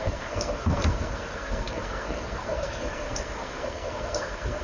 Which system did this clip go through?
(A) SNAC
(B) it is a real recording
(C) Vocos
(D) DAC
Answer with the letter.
A